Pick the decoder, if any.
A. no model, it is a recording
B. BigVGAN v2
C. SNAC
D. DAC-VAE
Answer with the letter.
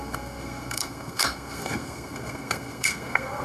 C